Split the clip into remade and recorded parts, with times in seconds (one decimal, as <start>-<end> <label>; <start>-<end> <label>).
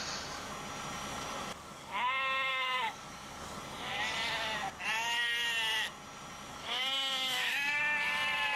0.0-1.5 recorded; 1.5-2.0 remade; 2.0-2.5 recorded; 2.5-3.6 remade; 3.6-6.5 recorded; 6.5-7.8 remade; 7.8-8.6 recorded